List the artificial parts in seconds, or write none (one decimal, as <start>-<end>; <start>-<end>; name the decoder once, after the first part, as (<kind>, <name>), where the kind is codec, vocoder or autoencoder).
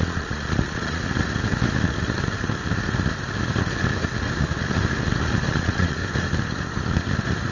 0.0-1.0 (vocoder, Vocos); 5.5-6.0